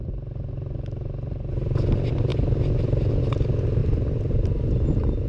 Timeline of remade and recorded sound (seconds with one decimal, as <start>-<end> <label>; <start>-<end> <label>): 0.0-5.3 recorded